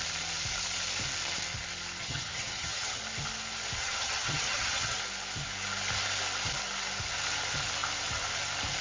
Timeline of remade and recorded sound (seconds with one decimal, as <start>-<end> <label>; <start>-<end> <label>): 0.0-2.0 recorded; 2.0-3.0 remade; 3.0-3.8 recorded; 3.8-5.0 remade; 5.0-8.8 recorded